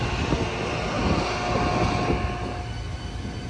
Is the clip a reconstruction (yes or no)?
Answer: no